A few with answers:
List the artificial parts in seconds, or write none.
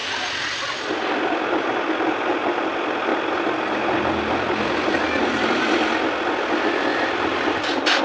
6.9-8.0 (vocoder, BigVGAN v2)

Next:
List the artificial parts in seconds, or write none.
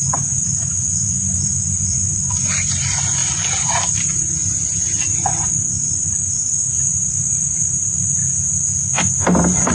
0.0-8.2 (vocoder, BigVGAN v2)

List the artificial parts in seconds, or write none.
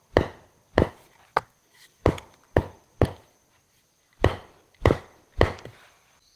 1.3-5.0 (vocoder, BigVGAN v2)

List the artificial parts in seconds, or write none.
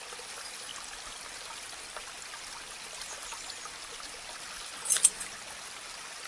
none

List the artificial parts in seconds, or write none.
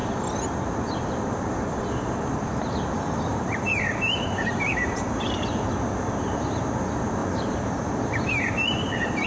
3.3-5.7 (vocoder, BigVGAN v2); 7.2-7.7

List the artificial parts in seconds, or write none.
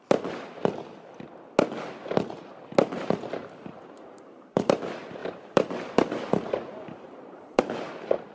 3.4-4.8 (vocoder, BigVGAN v2); 5.2-7.6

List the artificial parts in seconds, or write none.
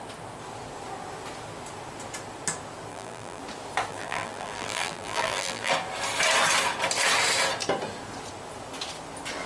2.9-3.4 (vocoder, BigVGAN v2); 3.9-5.7